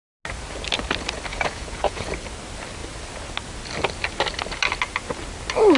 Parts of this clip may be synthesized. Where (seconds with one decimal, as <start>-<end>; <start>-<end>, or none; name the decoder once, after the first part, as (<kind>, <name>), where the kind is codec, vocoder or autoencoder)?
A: 1.3-2.1 (vocoder, Vocos)